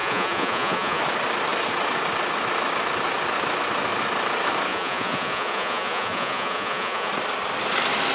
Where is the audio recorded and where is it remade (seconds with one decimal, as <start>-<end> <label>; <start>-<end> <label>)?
0.0-1.0 remade; 1.0-4.7 recorded; 4.7-7.1 remade; 7.1-8.1 recorded